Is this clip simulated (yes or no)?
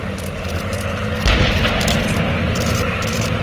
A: no